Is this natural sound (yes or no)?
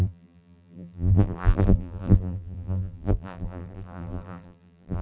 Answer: no